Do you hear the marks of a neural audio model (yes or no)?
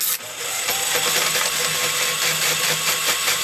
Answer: no